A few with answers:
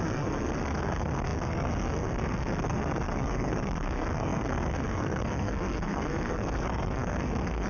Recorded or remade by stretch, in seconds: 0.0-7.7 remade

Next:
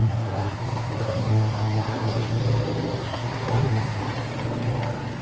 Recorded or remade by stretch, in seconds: 0.0-2.4 remade; 2.4-3.0 recorded; 3.0-4.0 remade; 4.0-5.2 recorded

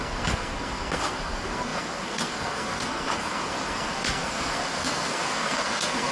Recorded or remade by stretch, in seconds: 0.0-6.1 remade